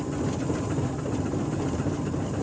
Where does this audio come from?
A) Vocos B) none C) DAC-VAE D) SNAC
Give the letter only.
B